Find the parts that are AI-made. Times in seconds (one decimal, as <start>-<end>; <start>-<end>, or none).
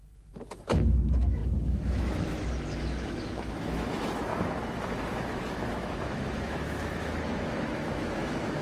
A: 0.0-8.6